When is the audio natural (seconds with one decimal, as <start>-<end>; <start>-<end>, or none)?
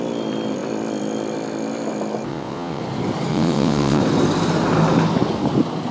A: 0.0-2.3; 2.8-3.3; 4.0-5.9